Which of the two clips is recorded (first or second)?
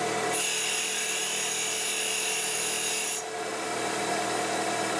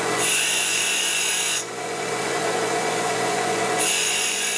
first